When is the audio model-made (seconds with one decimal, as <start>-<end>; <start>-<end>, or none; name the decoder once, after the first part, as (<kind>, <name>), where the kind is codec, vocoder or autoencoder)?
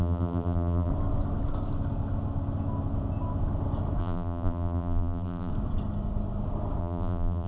0.0-0.9 (vocoder, BigVGAN v2); 4.0-5.5; 6.8-7.5